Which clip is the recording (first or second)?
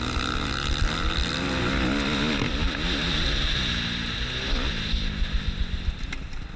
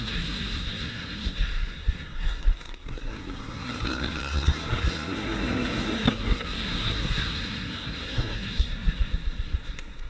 first